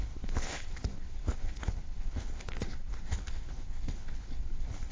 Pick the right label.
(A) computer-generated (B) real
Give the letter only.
A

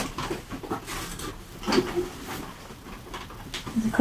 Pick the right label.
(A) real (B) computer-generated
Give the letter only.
A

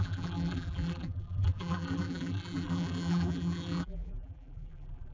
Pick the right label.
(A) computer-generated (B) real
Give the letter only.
A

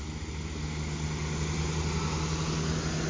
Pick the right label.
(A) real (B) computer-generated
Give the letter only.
A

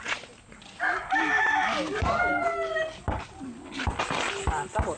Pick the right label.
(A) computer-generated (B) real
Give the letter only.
B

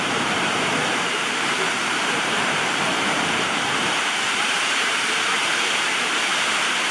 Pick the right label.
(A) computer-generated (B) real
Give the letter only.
A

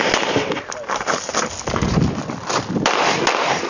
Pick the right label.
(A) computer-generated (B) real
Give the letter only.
B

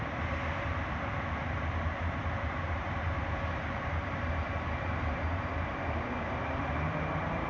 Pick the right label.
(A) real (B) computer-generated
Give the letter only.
B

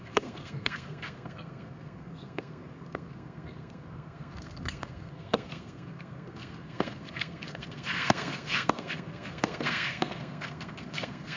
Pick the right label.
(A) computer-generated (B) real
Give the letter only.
A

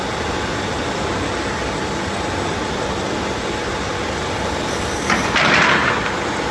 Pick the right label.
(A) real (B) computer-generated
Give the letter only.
A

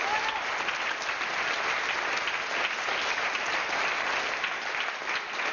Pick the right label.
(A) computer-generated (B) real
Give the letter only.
B